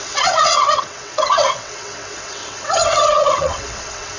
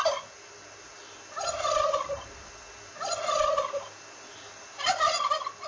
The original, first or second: second